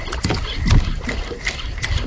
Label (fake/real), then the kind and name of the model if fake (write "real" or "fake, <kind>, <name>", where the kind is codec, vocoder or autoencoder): real